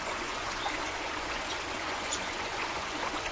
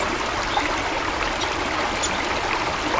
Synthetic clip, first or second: first